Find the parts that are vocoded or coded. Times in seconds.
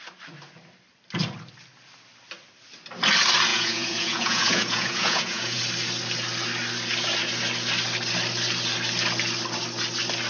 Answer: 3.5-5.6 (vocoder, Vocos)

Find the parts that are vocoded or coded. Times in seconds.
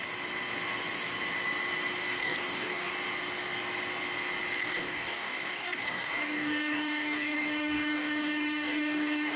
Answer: 2.2-2.9 (codec, DAC); 4.6-9.4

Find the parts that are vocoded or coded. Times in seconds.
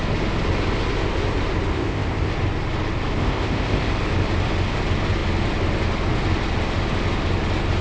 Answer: 1.7-2.3 (codec, ZipCodec); 3.2-3.9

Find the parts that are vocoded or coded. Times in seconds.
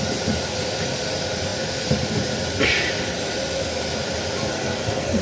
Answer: 4.5-5.2 (codec, SNAC)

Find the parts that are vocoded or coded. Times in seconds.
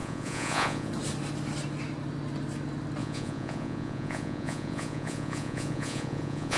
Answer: 0.0-0.9 (vocoder, Vocos); 3.0-6.6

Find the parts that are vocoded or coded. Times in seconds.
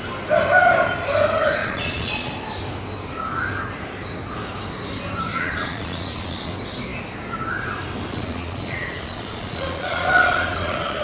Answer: 1.6-2.3 (vocoder, Vocos); 5.3-6.5; 8.1-11.0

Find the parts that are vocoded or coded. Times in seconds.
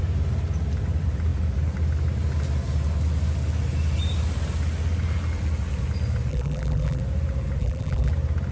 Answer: 6.3-7.0 (vocoder, BigVGAN v2); 7.6-8.1